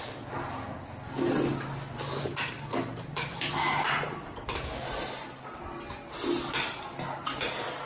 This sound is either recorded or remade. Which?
recorded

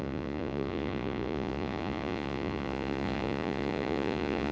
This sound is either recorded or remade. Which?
remade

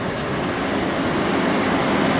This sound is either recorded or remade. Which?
recorded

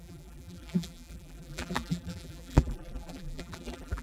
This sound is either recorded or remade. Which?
remade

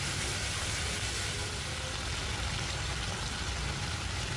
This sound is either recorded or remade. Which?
recorded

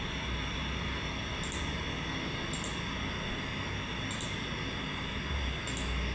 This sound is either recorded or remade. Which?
recorded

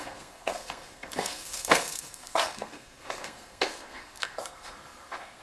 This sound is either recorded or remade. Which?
remade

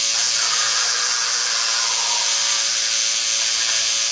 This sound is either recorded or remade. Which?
recorded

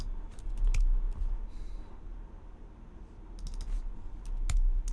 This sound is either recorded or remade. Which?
recorded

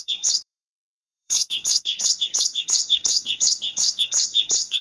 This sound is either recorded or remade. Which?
remade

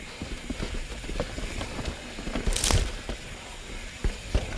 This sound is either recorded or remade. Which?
recorded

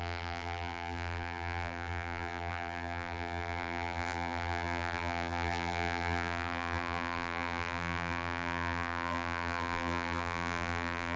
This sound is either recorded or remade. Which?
remade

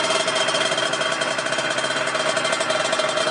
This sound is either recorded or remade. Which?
recorded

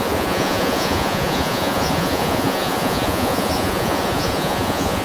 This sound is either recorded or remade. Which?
remade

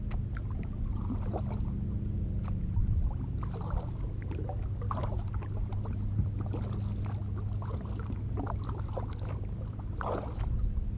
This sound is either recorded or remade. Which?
recorded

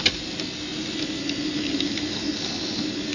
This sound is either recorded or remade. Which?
recorded